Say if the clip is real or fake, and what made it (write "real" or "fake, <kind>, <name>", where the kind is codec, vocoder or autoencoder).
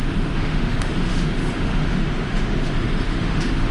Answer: fake, autoencoder, DAC-VAE